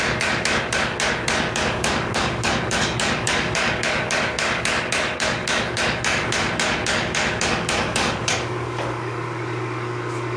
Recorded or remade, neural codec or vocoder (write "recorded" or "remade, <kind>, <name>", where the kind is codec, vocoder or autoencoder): remade, codec, DAC